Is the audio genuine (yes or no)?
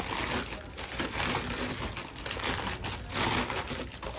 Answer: yes